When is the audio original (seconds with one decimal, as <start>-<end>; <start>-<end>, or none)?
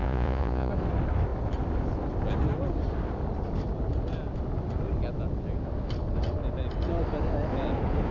0.7-8.1